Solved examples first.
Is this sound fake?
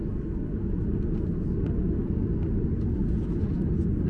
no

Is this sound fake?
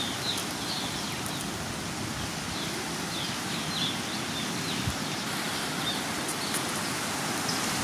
no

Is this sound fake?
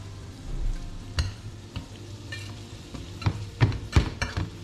yes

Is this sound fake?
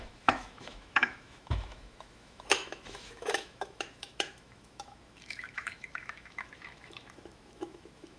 yes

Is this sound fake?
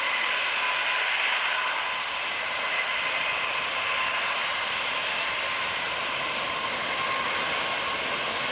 no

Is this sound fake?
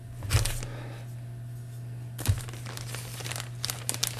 no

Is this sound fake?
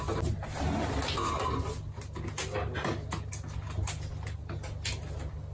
no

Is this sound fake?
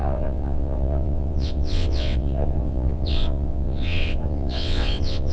yes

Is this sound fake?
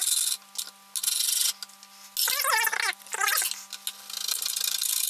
no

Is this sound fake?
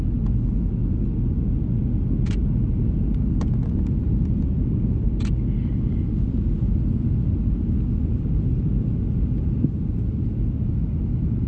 no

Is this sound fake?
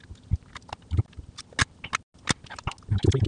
no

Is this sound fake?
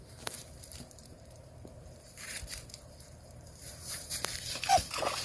yes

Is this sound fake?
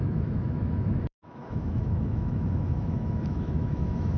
yes